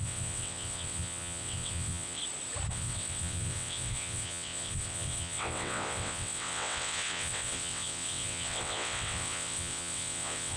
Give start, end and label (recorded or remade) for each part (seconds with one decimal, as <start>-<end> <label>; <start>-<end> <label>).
0.0-2.2 remade; 2.2-2.7 recorded; 2.7-10.6 remade

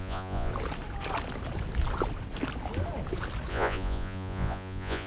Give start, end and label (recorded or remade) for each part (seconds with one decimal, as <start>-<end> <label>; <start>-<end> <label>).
0.0-0.5 remade; 0.5-3.5 recorded; 3.5-5.1 remade

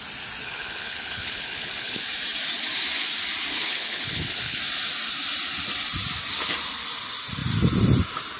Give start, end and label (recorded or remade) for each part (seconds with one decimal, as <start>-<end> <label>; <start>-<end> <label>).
0.0-0.4 recorded; 0.4-2.0 remade; 2.0-3.5 recorded; 3.5-4.6 remade; 4.6-8.4 recorded